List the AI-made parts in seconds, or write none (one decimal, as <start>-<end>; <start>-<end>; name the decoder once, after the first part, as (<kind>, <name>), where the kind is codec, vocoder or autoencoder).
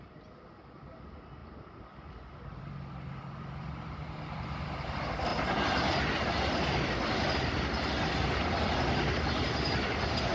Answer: none